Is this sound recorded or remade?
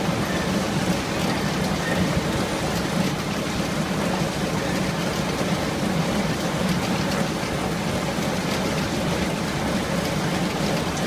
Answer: recorded